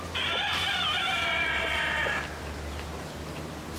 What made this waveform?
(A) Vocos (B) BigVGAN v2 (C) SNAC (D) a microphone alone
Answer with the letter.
D